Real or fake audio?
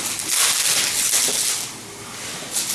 real